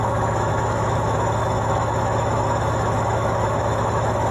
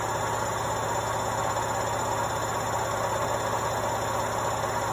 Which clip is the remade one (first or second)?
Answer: first